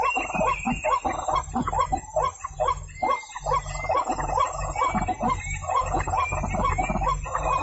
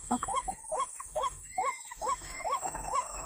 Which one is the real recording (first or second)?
first